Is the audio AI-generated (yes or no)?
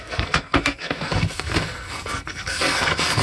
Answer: yes